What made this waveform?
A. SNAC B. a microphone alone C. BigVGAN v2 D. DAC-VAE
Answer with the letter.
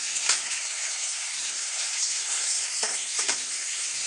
A